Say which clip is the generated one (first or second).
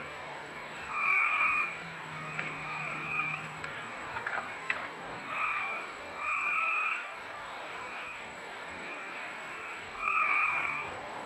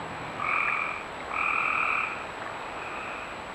first